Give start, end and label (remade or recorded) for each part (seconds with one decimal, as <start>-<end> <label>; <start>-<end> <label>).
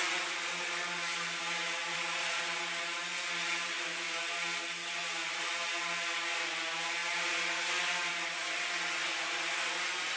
0.0-1.8 recorded; 1.8-2.4 remade; 2.4-5.0 recorded; 5.0-5.7 remade; 5.7-10.2 recorded